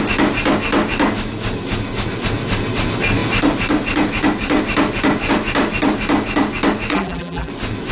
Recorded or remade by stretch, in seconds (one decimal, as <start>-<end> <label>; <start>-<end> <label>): 0.0-6.9 recorded; 6.9-7.5 remade; 7.5-7.9 recorded